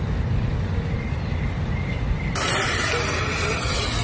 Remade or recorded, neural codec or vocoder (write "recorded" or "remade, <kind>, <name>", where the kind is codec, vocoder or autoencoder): recorded